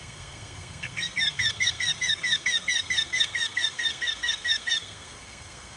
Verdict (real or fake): fake